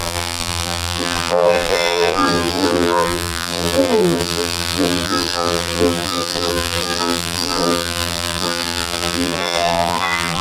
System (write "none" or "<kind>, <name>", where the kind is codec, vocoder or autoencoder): vocoder, BigVGAN v2